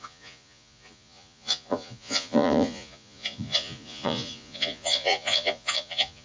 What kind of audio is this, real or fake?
fake